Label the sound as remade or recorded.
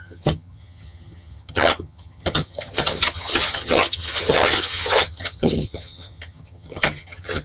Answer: remade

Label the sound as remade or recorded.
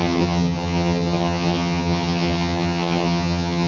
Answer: remade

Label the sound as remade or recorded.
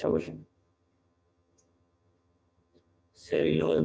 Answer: remade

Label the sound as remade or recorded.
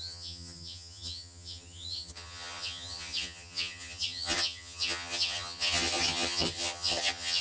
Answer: remade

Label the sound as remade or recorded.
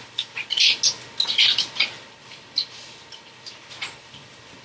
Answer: recorded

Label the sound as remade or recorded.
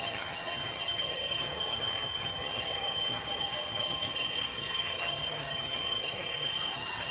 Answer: remade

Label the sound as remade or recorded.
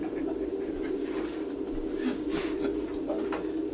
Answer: recorded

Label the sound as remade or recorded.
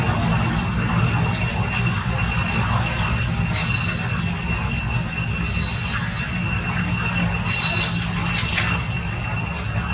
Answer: recorded